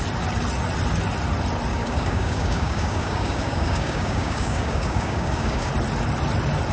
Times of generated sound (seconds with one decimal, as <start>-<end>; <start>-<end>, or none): 1.7-5.7

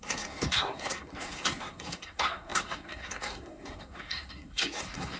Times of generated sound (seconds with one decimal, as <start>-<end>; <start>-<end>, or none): 0.0-5.2